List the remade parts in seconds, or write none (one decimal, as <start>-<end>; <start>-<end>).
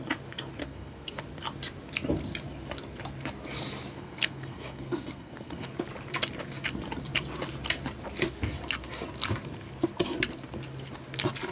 0.6-1.2; 3.9-5.7